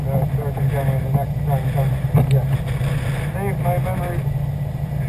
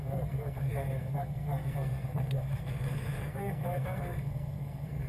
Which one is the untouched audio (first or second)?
first